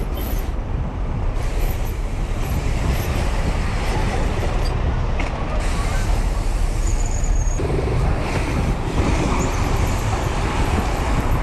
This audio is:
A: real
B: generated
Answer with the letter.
B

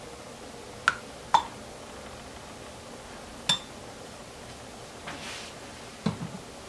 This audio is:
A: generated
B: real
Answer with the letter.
B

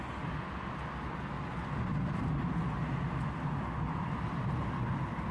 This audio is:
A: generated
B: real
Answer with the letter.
B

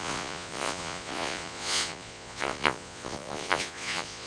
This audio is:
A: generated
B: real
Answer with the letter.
A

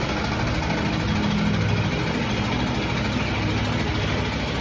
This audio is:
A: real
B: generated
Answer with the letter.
A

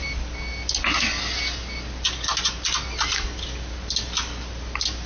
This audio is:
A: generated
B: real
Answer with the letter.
B